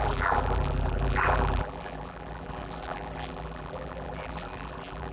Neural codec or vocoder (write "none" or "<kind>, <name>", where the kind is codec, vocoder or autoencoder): vocoder, BigVGAN v2